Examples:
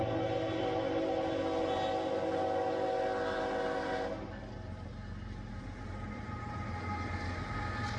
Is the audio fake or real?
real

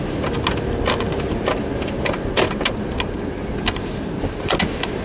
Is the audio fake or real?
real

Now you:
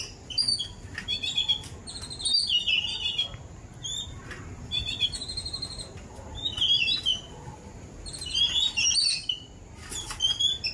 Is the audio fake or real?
real